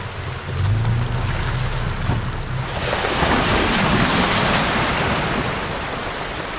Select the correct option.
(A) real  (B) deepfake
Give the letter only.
A